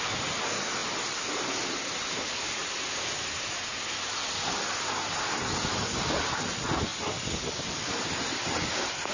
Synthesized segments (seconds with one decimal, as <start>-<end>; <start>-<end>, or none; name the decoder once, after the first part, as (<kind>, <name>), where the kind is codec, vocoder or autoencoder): none